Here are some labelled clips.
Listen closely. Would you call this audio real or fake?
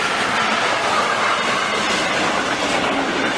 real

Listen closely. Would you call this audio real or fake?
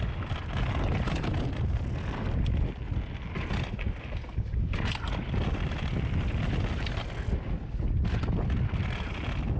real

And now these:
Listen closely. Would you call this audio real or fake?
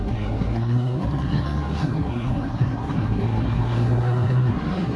fake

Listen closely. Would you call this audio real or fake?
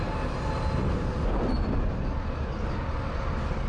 real